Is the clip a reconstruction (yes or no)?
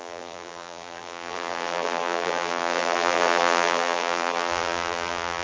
yes